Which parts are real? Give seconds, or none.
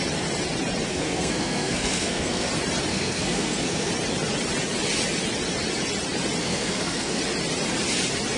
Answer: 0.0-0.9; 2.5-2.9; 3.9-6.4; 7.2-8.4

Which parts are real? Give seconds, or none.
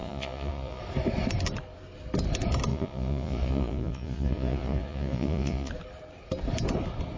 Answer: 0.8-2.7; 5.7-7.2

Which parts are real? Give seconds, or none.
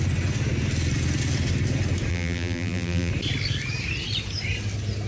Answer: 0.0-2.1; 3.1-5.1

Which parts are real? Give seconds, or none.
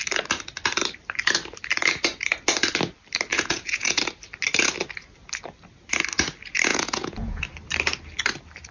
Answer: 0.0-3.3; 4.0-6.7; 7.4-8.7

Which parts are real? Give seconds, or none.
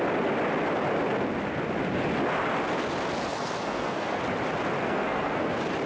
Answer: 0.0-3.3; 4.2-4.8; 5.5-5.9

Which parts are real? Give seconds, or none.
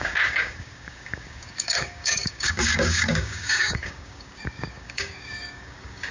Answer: none